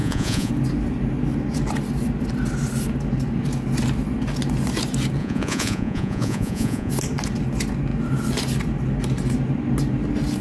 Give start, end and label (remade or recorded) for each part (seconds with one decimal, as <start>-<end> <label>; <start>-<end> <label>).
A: 0.0-0.5 remade; 0.5-5.2 recorded; 5.2-6.9 remade; 6.9-10.4 recorded